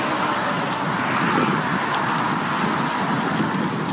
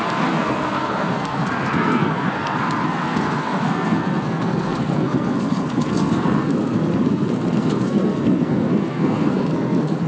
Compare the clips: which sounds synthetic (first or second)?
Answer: second